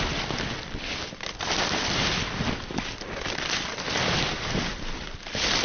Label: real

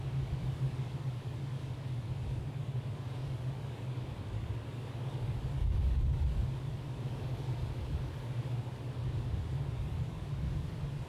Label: fake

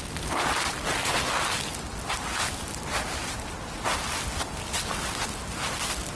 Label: real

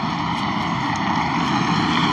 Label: real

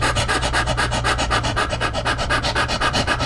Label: fake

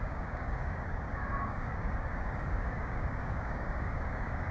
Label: fake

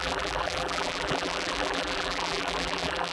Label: fake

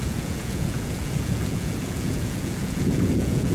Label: fake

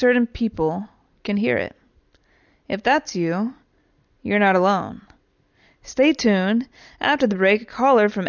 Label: real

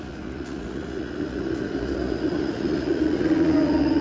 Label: fake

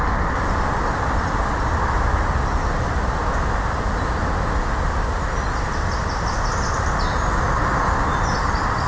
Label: real